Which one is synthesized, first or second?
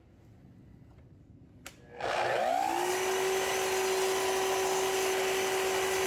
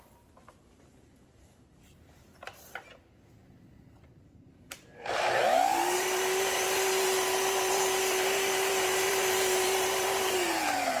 second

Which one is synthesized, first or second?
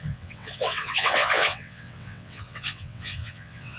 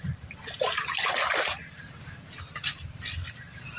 first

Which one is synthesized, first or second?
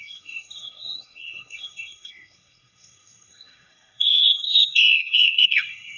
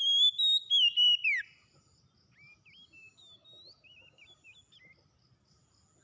first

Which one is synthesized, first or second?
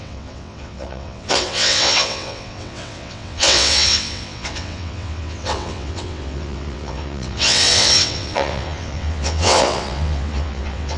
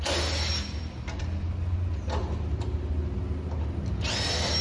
first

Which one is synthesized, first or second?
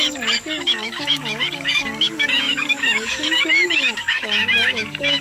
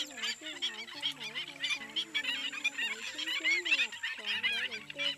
first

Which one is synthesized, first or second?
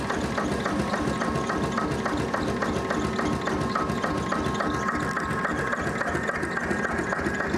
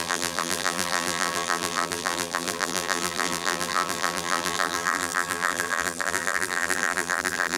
second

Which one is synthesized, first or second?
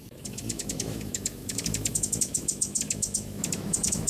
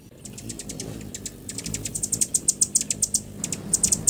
first